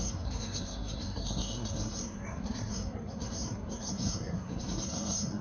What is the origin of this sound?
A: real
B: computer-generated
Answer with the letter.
B